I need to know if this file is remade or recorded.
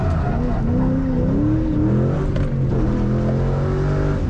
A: recorded